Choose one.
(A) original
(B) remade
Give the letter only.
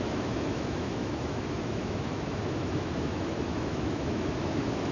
B